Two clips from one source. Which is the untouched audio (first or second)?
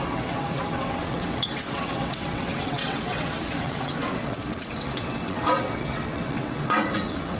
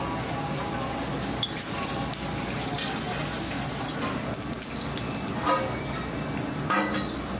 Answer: second